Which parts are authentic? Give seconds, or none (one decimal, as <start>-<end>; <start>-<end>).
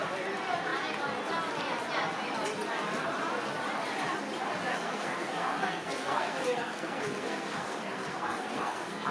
0.0-4.7